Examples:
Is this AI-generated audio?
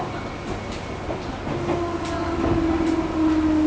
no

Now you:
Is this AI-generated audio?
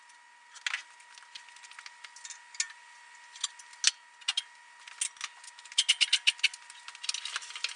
no